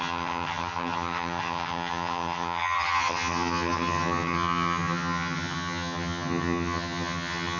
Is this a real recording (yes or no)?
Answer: no